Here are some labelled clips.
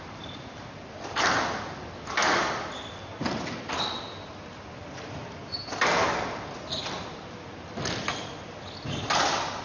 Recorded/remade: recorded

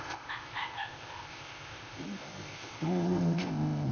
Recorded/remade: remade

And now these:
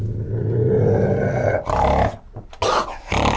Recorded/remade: recorded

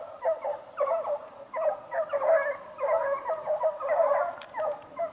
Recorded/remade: recorded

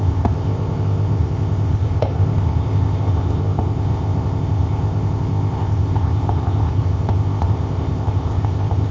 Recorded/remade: remade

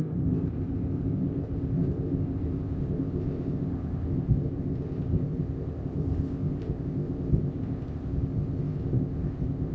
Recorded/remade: remade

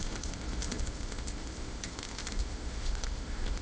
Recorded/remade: remade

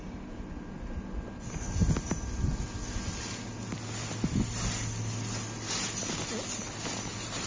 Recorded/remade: recorded